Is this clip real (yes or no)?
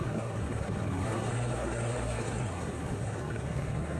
no